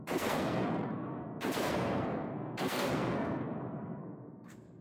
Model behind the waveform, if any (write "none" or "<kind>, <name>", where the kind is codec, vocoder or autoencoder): codec, SNAC